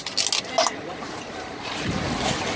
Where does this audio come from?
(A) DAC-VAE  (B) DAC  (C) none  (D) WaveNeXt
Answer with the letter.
C